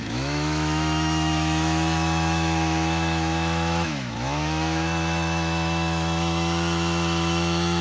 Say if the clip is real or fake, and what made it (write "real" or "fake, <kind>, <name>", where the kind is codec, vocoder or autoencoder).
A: fake, autoencoder, DAC-VAE